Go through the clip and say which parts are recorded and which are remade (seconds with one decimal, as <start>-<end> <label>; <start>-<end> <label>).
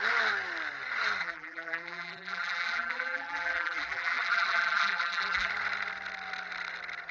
0.0-1.2 recorded; 1.2-5.5 remade; 5.5-7.1 recorded